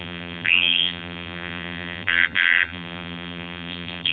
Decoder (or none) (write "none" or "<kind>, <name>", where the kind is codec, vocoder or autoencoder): vocoder, BigVGAN v2